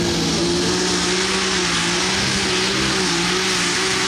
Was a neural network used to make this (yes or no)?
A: no